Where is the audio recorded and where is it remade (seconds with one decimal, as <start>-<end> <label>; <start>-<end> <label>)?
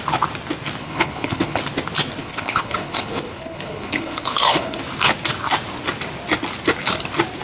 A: 0.0-0.8 recorded; 0.8-1.6 remade; 1.6-2.2 recorded; 2.2-4.8 remade; 4.8-7.4 recorded